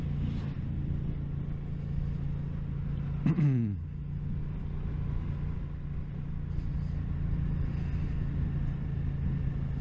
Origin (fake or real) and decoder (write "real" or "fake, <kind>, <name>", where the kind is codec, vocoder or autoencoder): real